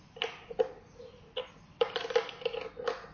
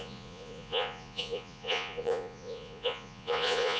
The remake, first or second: second